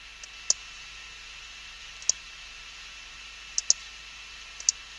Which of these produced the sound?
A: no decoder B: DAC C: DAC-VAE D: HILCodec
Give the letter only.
A